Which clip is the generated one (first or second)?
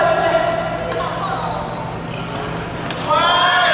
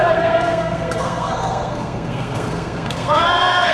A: second